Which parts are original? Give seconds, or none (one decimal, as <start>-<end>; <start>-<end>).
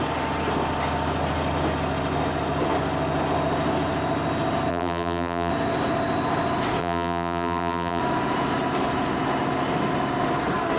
0.0-4.7; 5.5-6.8; 8.0-10.8